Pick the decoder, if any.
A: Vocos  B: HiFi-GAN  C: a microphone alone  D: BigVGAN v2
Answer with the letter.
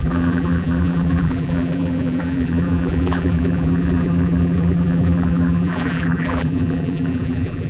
D